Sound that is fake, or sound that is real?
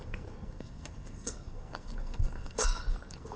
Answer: fake